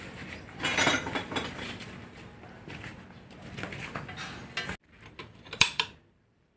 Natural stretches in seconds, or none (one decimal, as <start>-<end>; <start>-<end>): 2.9-5.4